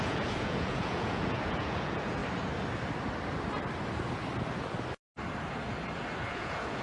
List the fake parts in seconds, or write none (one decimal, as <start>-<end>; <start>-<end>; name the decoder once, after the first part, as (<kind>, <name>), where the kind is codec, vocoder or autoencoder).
0.0-2.2 (vocoder, Vocos); 6.3-6.8